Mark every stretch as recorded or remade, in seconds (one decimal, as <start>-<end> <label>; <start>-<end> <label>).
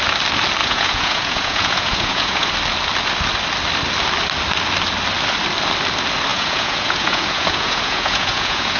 0.0-0.6 recorded; 0.6-2.5 remade; 2.5-6.3 recorded; 6.3-8.8 remade